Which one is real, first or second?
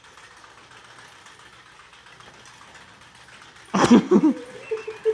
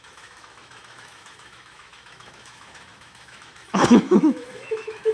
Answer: first